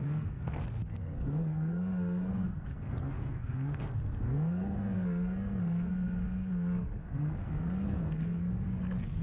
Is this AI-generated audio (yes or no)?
yes